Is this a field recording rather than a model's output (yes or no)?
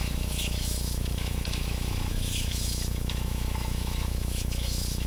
no